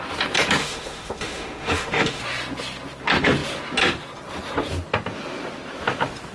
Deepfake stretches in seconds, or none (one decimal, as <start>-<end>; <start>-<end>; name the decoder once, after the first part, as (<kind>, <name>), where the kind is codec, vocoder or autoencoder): 0.6-2.2 (autoencoder, DAC-VAE)